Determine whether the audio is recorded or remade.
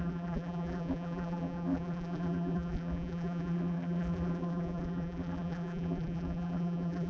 remade